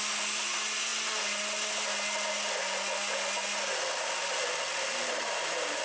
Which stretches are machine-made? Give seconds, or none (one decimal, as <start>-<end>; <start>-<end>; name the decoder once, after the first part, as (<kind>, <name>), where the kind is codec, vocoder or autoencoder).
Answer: 4.9-5.8 (vocoder, BigVGAN v2)